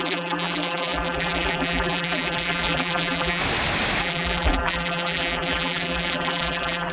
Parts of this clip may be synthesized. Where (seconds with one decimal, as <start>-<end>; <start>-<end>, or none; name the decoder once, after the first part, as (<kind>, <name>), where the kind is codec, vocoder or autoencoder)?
0.0-3.4 (vocoder, BigVGAN v2); 4.0-6.9